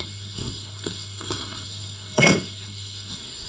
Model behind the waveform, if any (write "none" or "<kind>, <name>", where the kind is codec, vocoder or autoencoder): codec, SNAC